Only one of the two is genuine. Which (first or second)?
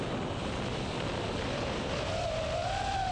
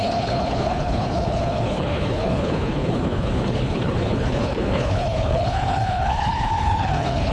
first